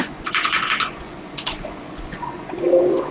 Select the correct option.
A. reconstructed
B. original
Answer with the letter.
A